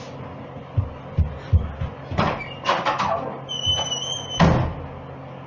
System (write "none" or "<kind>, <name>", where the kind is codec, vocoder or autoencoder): none